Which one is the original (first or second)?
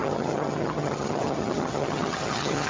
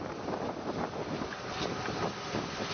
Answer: second